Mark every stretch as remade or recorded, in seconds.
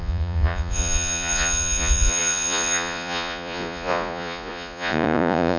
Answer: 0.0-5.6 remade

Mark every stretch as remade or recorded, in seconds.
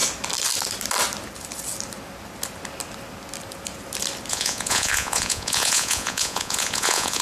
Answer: 0.0-4.3 recorded; 4.3-7.2 remade